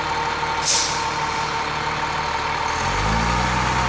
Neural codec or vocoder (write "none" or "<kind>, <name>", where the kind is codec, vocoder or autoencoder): none